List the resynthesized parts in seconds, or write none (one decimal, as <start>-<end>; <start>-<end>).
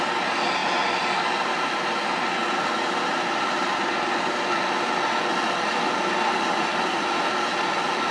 none